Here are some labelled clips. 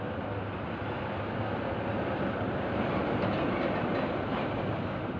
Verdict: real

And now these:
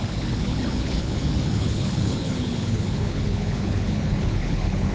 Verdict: fake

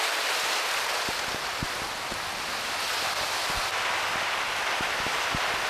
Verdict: real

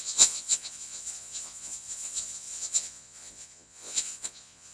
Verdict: fake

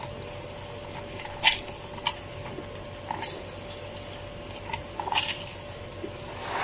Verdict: real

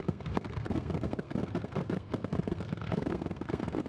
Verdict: fake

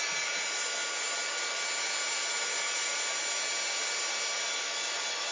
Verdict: real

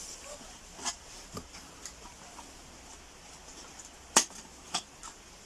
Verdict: real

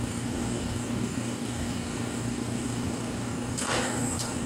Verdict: fake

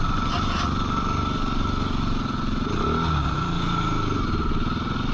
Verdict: real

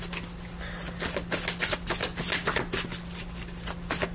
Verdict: real